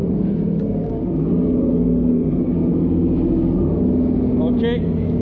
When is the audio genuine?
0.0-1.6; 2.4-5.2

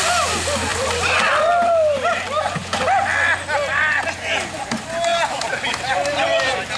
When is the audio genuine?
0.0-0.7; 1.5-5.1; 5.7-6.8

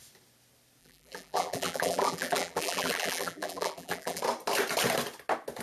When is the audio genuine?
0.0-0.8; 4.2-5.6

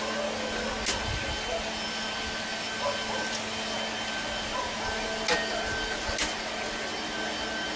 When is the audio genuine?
0.0-7.8